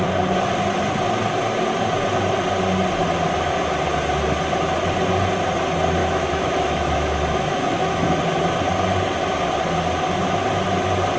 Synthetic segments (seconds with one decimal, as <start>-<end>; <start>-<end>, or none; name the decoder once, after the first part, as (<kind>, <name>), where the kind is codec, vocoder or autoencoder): 6.0-8.2 (autoencoder, DAC-VAE)

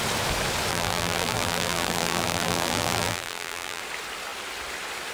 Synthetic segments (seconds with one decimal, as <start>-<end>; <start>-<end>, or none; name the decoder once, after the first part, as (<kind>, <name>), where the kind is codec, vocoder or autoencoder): 0.7-3.8 (vocoder, BigVGAN v2)